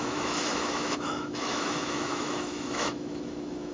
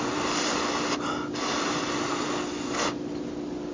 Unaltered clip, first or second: second